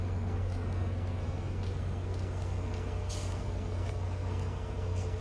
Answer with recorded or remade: remade